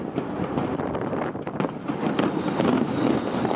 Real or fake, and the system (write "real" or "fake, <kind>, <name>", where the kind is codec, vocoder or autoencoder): real